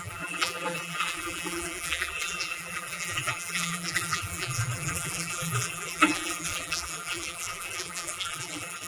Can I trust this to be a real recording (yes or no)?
no